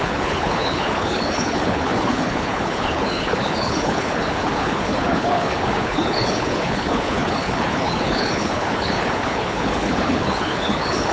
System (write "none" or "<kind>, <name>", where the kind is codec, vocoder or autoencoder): codec, HILCodec